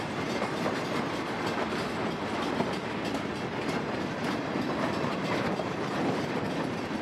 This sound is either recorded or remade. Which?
remade